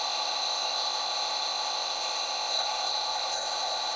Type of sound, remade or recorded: remade